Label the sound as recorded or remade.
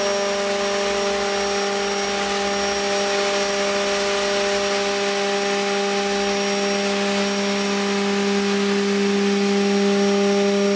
recorded